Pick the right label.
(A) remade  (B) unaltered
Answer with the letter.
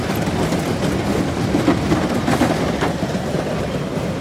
B